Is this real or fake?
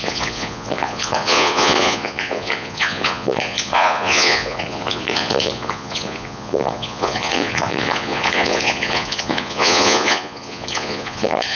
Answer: fake